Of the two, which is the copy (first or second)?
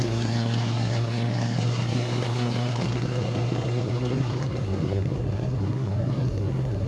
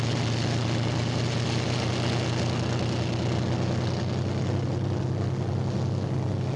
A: first